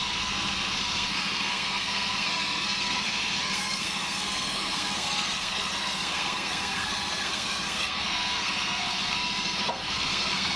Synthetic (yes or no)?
yes